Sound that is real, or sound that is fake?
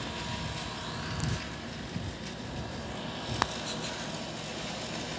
real